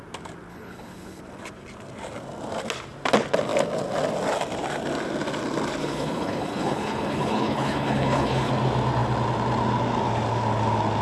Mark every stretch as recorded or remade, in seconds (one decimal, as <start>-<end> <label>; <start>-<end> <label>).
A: 0.0-0.5 recorded; 0.5-1.2 remade; 1.2-5.8 recorded; 5.8-8.5 remade; 8.5-11.0 recorded